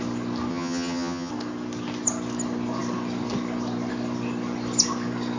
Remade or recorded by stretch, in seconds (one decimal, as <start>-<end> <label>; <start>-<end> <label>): 0.0-0.5 recorded; 0.5-1.3 remade; 1.3-5.4 recorded